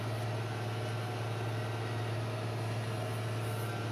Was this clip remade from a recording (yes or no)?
no